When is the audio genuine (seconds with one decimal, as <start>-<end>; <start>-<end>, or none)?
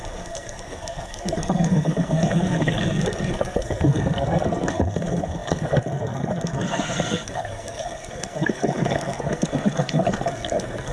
none